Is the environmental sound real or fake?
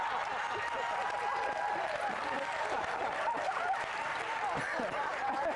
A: real